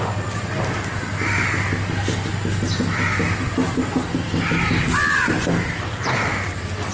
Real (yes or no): yes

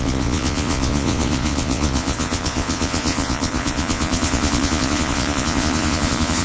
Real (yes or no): no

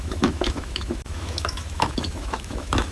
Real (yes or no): no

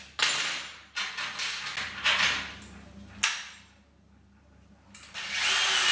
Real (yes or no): yes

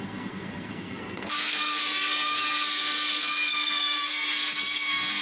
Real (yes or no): no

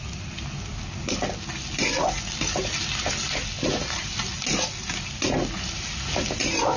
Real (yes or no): yes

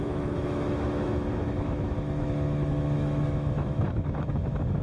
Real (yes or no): no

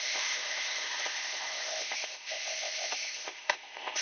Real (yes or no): no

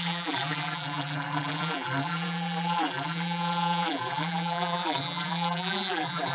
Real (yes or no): no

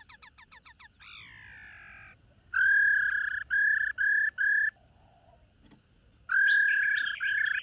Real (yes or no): yes